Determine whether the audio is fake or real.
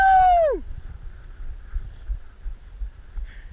real